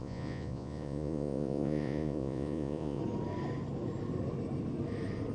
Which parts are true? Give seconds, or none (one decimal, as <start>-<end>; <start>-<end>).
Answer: 3.0-5.3